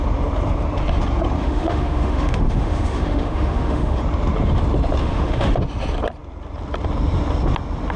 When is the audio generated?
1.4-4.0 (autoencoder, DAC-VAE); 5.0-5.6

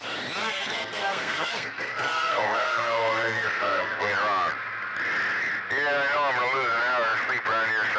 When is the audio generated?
0.4-4.1 (codec, SNAC)

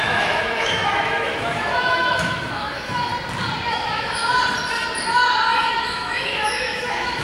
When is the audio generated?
0.0-3.1 (autoencoder, DAC-VAE); 3.7-4.2; 5.6-7.2